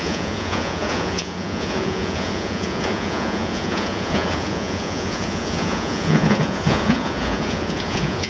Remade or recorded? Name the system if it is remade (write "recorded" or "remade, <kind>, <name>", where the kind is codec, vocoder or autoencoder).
remade, vocoder, Vocos